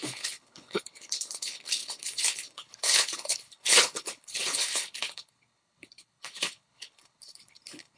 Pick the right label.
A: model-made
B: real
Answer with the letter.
A